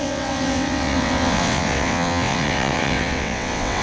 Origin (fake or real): fake